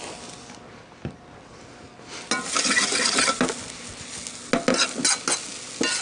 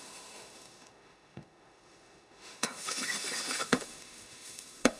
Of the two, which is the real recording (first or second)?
first